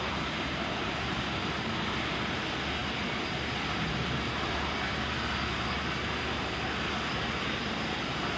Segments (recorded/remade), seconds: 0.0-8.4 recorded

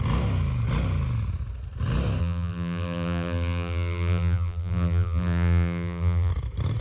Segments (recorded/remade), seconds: 0.0-2.2 recorded; 2.2-6.3 remade; 6.3-6.8 recorded

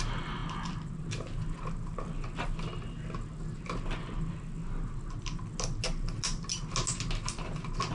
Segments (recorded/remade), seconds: 0.0-7.9 recorded